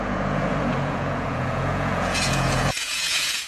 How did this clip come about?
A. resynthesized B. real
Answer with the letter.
A